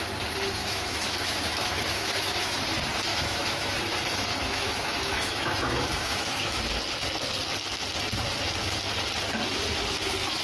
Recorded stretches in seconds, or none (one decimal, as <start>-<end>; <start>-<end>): 0.0-0.6; 2.6-3.1; 3.7-4.3; 6.6-10.4